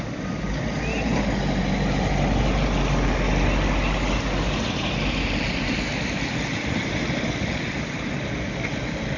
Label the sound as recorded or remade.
recorded